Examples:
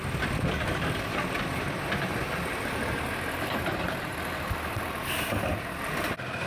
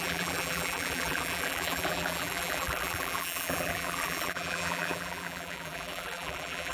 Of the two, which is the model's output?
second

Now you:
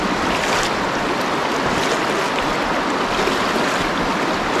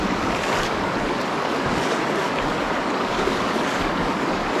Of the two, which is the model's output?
second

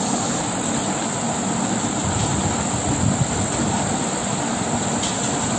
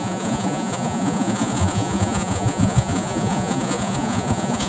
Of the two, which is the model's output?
second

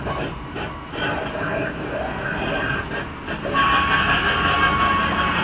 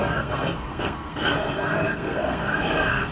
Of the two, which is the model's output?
second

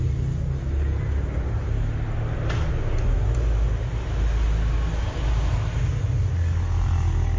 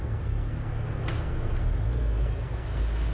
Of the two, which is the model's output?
second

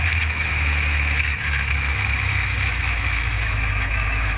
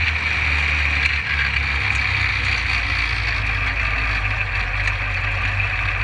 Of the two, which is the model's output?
first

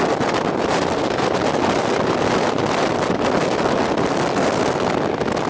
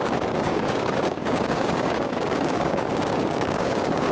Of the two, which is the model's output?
second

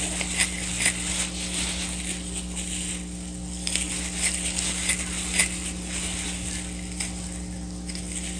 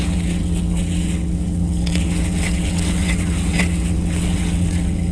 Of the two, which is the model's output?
second